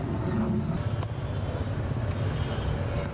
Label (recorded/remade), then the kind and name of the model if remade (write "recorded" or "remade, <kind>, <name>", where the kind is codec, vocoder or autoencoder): recorded